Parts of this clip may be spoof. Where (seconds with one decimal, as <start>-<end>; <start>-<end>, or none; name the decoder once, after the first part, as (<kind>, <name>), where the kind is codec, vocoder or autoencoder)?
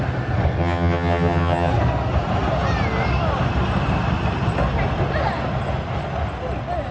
0.6-1.7 (vocoder, HiFi-GAN)